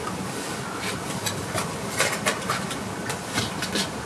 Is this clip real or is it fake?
real